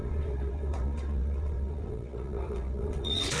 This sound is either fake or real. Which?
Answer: fake